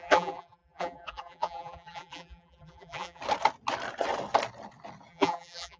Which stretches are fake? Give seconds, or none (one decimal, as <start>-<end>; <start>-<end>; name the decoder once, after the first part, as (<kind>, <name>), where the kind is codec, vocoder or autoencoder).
0.0-3.2 (vocoder, BigVGAN v2); 5.1-5.8